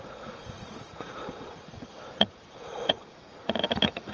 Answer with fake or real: fake